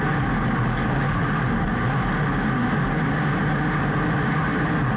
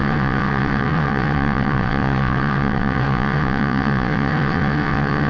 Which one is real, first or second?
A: first